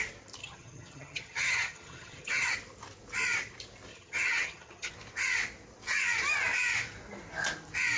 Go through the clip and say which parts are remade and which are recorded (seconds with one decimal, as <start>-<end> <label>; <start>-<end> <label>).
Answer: 0.0-0.4 recorded; 0.4-2.5 remade; 2.5-3.9 recorded; 3.9-4.9 remade; 4.9-8.0 recorded